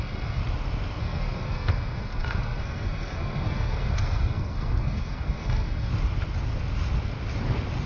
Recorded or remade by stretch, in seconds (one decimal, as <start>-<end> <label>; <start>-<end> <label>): 0.0-0.4 remade; 0.4-1.0 recorded; 1.0-5.9 remade; 5.9-7.9 recorded